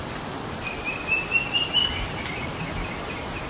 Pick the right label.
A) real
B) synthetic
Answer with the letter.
A